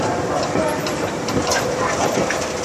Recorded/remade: remade